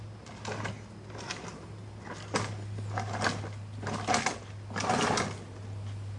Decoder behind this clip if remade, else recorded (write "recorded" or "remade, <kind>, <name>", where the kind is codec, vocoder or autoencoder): recorded